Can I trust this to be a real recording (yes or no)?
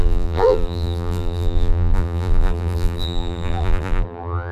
no